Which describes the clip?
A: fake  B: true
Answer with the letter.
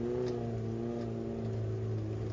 B